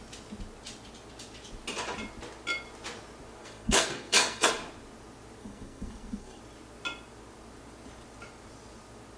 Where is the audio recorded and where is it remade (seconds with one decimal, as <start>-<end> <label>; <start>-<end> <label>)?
0.0-3.4 recorded; 3.4-4.5 remade; 4.5-5.4 recorded; 5.4-6.4 remade; 6.4-9.2 recorded